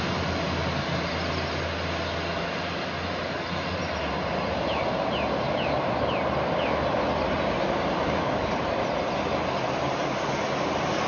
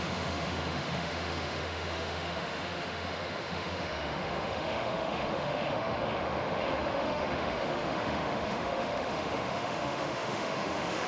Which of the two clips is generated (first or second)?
second